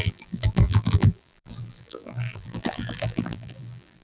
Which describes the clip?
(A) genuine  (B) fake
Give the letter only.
B